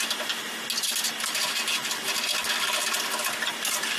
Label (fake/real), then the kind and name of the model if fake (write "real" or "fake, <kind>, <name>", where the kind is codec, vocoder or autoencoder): real